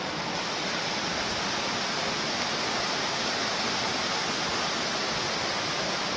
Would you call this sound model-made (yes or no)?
no